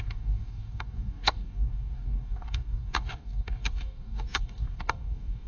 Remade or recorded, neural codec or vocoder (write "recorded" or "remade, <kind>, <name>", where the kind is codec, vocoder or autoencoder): remade, codec, DAC